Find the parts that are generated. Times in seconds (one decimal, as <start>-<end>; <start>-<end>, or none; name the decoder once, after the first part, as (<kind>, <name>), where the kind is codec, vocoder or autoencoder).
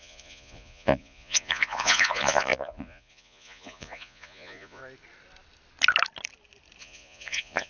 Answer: 0.0-4.8 (vocoder, Vocos); 6.8-7.7